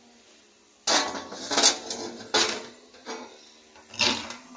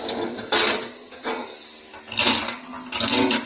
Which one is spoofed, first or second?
second